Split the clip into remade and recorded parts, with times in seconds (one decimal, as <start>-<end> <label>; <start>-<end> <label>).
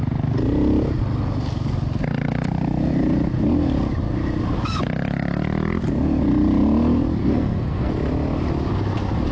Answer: 0.0-7.2 recorded; 7.2-7.9 remade; 7.9-9.3 recorded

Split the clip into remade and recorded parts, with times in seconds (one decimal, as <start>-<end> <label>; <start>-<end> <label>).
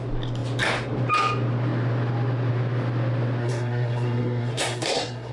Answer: 0.0-3.4 recorded; 3.4-5.3 remade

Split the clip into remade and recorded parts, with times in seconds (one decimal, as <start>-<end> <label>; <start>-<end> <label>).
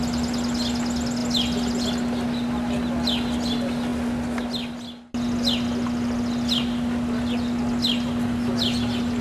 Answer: 0.0-9.2 recorded